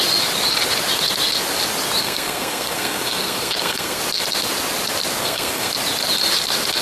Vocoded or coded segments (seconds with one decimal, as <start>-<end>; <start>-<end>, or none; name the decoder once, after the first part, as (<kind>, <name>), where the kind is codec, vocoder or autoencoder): 2.0-4.0 (codec, SNAC); 5.2-5.7